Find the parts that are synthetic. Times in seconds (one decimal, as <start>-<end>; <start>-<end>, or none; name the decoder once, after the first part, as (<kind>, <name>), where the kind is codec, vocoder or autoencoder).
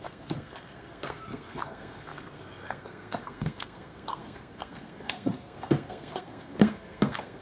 0.0-7.4 (codec, SNAC)